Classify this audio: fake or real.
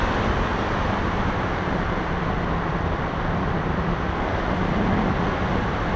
real